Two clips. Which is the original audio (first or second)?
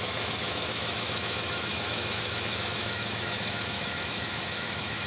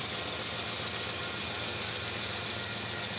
second